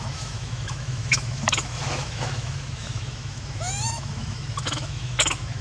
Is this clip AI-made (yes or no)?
yes